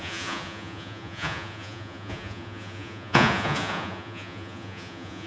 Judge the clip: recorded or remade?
remade